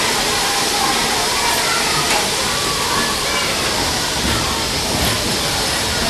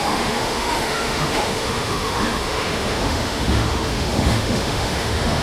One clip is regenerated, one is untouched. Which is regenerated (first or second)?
second